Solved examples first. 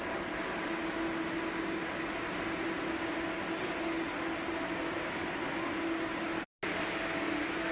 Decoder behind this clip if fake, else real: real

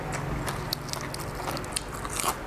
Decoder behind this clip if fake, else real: real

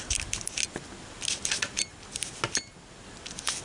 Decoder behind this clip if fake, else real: real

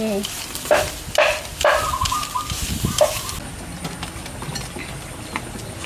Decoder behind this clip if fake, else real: real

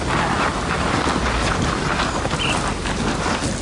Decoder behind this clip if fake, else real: real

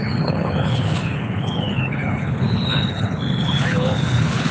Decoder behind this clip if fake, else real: fake, codec, HILCodec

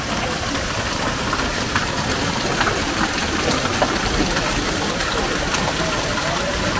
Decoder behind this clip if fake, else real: fake, vocoder, BigVGAN v2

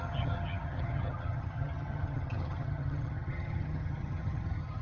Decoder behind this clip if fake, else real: fake, vocoder, HiFi-GAN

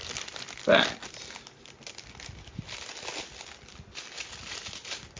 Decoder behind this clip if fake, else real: real